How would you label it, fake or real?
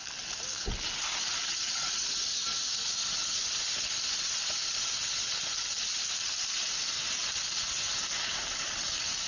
real